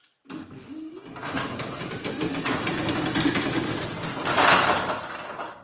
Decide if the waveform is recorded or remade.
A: recorded